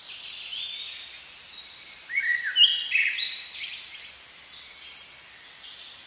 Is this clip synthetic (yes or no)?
no